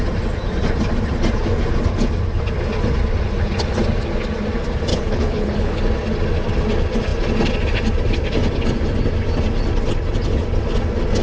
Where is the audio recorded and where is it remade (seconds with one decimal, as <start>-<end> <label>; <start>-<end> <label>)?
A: 0.0-4.9 recorded; 4.9-5.8 remade; 5.8-11.2 recorded